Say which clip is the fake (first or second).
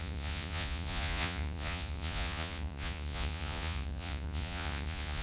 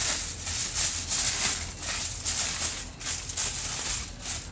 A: first